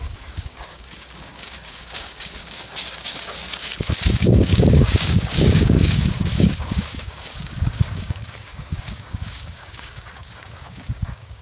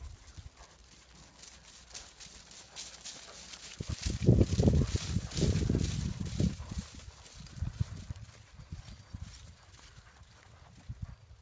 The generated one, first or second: first